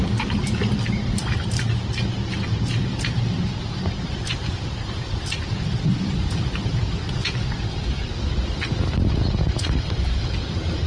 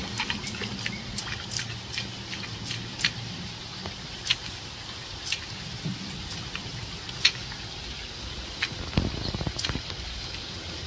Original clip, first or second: second